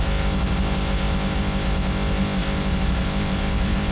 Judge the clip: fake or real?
fake